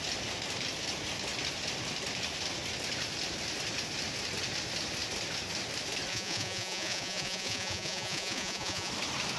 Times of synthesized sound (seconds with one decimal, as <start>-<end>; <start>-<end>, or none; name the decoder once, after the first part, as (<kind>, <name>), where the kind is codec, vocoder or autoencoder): 6.1-8.9 (vocoder, Vocos)